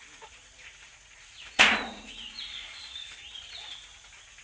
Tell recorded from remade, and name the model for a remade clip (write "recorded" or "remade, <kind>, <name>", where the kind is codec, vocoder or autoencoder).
remade, vocoder, Vocos